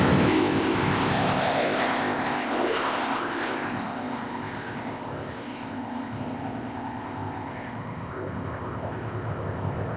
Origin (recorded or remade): remade